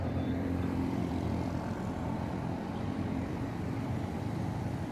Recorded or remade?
remade